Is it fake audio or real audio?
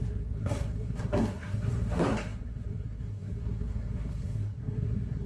fake